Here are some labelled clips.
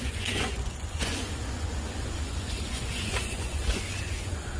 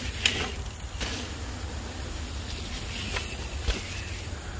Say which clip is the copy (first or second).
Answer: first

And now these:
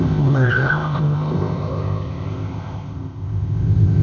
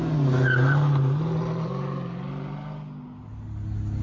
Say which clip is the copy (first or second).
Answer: first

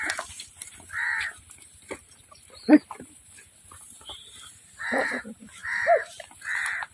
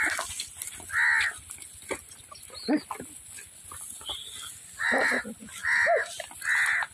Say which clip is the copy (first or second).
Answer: first